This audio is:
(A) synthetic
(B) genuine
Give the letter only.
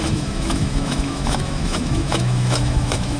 A